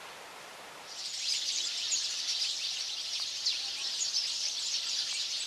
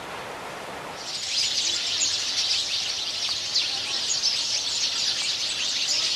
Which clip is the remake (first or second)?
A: first